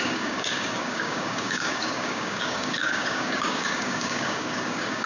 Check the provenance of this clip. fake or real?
fake